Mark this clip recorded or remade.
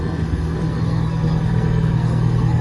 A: remade